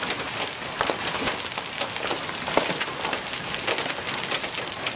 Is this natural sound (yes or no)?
yes